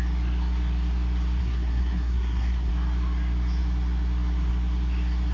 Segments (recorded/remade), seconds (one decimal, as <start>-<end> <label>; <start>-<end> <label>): 0.0-1.4 recorded; 1.4-2.7 remade; 2.7-5.3 recorded